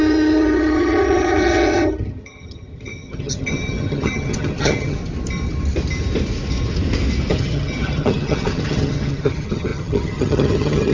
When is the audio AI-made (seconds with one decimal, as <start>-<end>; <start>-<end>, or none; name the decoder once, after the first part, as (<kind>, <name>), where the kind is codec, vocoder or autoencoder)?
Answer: 0.0-5.0 (vocoder, HiFi-GAN); 7.3-10.9